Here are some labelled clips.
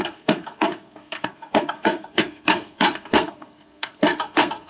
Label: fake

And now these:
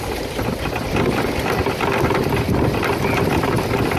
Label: real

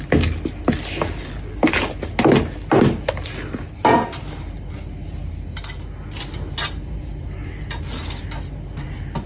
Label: real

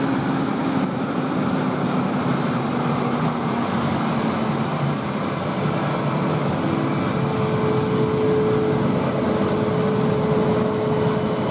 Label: real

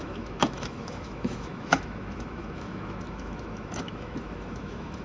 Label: fake